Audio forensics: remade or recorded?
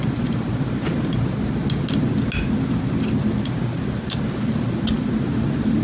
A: recorded